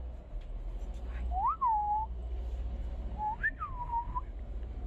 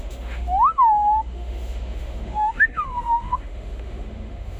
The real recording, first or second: first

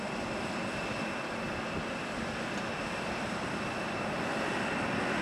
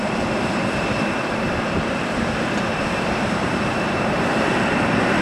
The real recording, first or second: first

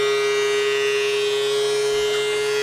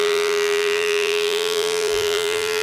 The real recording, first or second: first